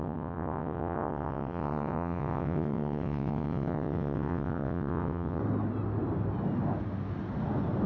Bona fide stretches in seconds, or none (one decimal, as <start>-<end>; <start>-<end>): 5.4-7.9